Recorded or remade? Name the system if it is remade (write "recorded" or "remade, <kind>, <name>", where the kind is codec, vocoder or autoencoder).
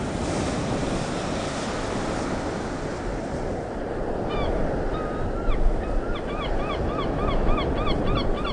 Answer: recorded